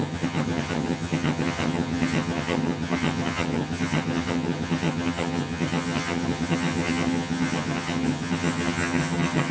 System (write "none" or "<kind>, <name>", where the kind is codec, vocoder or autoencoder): vocoder, HiFi-GAN